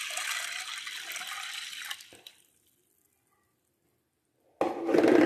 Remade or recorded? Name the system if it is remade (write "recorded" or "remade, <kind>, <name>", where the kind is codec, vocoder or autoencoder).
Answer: recorded